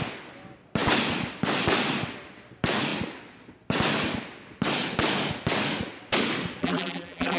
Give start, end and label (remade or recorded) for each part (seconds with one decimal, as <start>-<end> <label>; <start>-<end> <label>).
0.0-6.6 recorded; 6.6-7.4 remade